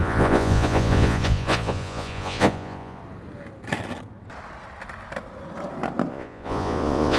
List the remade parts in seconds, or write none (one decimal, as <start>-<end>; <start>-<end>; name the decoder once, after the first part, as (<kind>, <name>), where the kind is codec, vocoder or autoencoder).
0.0-3.0 (vocoder, Vocos); 6.1-7.2